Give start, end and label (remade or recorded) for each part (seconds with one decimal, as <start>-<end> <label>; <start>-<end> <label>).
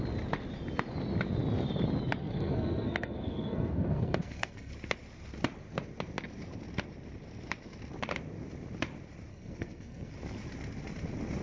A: 0.0-2.2 recorded; 2.2-4.7 remade; 4.7-9.3 recorded; 9.3-10.1 remade; 10.1-11.4 recorded